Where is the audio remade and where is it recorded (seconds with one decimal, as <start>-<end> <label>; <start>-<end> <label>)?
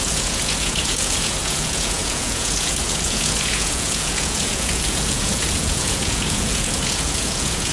0.0-7.7 remade